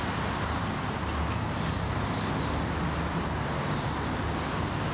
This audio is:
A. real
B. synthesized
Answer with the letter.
A